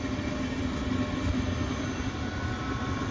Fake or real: real